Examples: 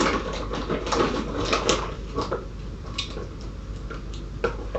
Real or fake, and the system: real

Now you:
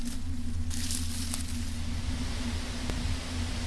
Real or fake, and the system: real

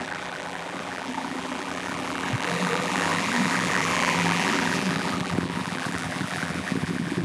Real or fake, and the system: fake, vocoder, BigVGAN v2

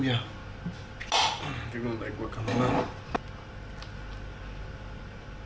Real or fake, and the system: real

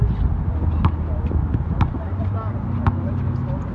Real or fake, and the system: real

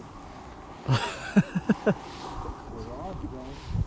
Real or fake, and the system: real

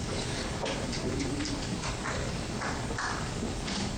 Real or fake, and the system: fake, codec, DAC